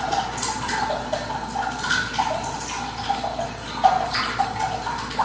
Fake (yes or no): no